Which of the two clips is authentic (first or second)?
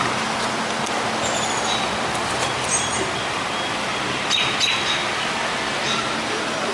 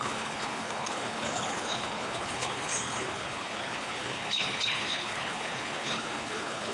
first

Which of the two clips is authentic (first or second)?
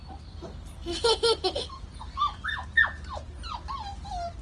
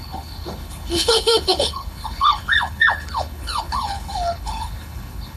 first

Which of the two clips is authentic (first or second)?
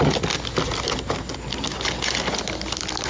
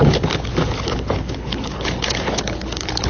first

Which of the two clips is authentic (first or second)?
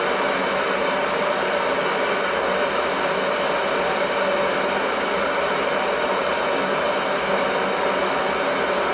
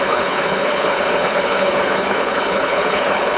first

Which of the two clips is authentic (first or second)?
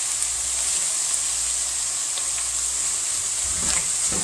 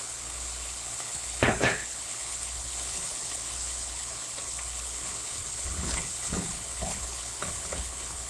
first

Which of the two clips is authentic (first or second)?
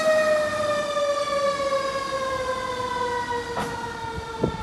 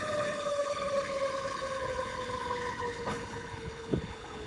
first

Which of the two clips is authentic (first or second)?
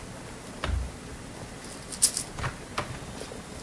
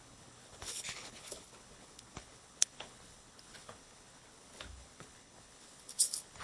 first